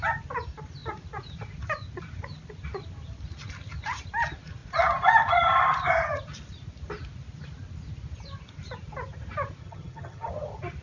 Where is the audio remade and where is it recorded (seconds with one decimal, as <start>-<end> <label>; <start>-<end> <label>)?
0.0-9.6 recorded; 9.6-10.3 remade; 10.3-10.8 recorded